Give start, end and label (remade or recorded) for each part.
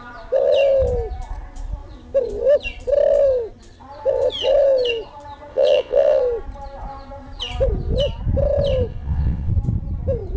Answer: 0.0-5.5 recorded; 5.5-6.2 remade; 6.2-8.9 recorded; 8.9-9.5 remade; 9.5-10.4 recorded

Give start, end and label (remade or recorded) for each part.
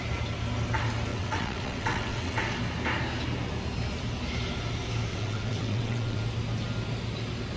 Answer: 0.0-1.1 recorded; 1.1-2.4 remade; 2.4-5.1 recorded; 5.1-6.2 remade; 6.2-7.6 recorded